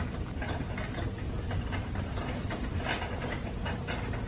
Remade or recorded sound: recorded